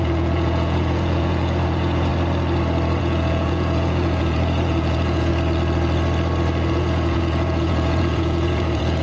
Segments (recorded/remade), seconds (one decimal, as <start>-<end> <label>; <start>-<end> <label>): 0.0-2.1 remade; 2.1-3.0 recorded; 3.0-5.3 remade; 5.3-6.7 recorded; 6.7-9.0 remade